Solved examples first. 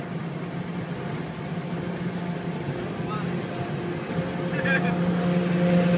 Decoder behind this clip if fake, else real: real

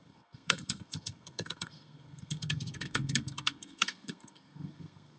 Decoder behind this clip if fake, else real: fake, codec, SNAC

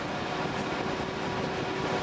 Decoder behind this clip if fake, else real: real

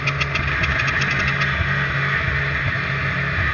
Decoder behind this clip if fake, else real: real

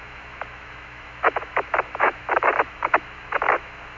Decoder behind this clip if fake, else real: fake, autoencoder, DAC-VAE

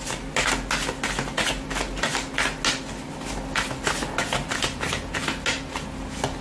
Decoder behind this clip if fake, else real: real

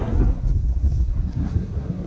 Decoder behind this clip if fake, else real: fake, codec, SNAC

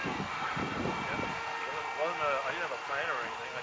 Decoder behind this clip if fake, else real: real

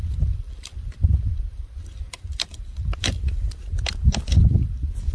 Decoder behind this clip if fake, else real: fake, vocoder, BigVGAN v2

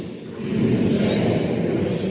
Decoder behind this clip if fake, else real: real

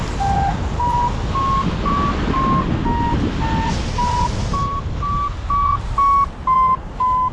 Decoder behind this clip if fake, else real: real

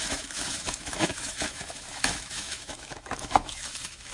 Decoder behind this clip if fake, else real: fake, autoencoder, DAC-VAE